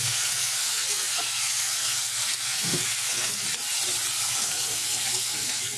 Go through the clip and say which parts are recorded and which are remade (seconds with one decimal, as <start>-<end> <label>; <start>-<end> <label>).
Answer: 0.0-3.4 remade; 3.4-4.2 recorded; 4.2-5.8 remade